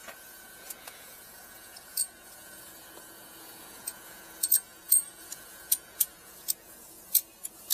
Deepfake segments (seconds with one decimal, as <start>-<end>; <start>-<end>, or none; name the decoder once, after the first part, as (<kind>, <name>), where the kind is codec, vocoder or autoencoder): 0.0-7.7 (vocoder, Vocos)